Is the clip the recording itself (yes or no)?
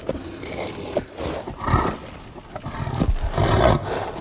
yes